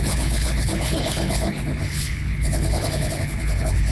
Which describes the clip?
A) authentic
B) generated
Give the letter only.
B